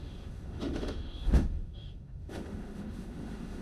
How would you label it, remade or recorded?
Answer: remade